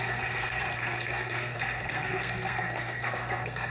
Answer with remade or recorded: remade